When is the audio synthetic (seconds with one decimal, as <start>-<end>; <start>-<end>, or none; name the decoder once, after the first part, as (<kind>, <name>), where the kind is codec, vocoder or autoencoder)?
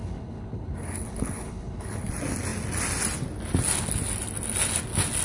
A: 0.0-2.1 (codec, HILCodec)